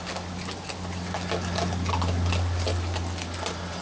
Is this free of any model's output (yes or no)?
yes